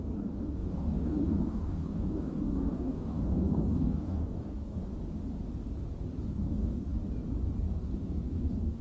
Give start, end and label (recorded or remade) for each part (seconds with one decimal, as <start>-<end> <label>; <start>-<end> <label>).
0.0-4.8 remade; 4.8-6.3 recorded; 6.3-7.0 remade; 7.0-7.7 recorded; 7.7-8.8 remade